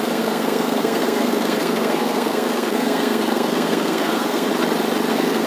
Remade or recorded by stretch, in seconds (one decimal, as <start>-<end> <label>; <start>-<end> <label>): 0.0-4.5 remade; 4.5-5.1 recorded; 5.1-5.5 remade